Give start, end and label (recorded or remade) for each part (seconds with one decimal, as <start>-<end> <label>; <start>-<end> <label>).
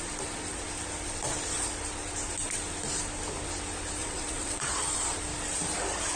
0.0-4.0 recorded; 4.0-4.8 remade; 4.8-6.2 recorded